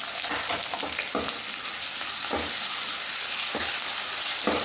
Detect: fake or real real